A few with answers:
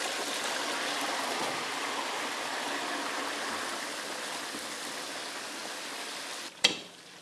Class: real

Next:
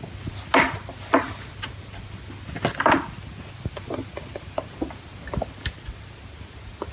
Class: real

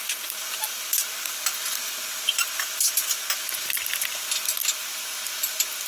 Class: real